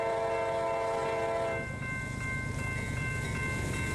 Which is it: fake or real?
real